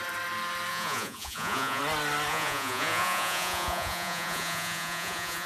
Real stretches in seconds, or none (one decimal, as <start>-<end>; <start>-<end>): 0.0-0.7; 1.8-2.3